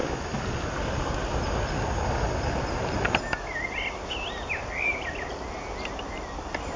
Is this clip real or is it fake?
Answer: real